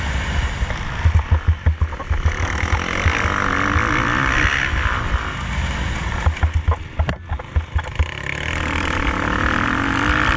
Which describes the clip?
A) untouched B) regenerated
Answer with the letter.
A